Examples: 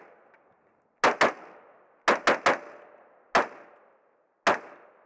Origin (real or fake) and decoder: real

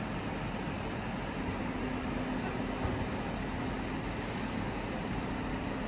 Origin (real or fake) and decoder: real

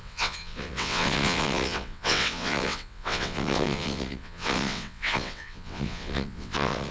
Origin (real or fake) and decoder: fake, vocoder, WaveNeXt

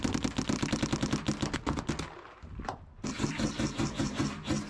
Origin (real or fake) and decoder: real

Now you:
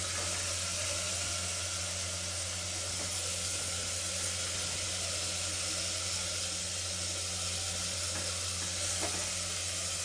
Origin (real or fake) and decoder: real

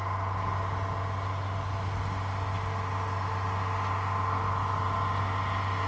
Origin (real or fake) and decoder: real